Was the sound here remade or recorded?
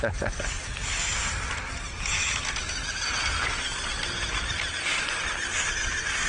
recorded